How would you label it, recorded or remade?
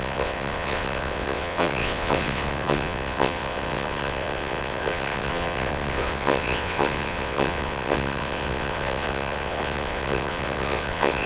remade